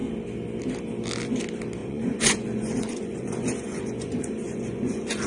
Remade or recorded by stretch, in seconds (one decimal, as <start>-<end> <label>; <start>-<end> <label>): 0.0-1.8 recorded; 1.8-5.3 remade